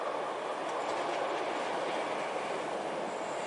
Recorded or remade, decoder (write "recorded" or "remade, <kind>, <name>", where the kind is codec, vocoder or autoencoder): recorded